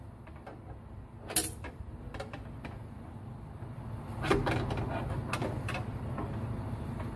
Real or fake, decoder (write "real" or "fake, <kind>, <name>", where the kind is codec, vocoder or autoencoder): real